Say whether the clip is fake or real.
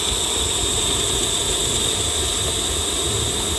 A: real